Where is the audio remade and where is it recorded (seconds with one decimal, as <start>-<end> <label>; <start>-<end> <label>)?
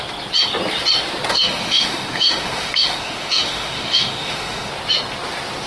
0.0-1.3 recorded; 1.3-4.7 remade; 4.7-5.7 recorded